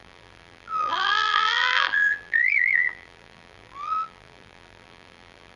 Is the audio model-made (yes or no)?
yes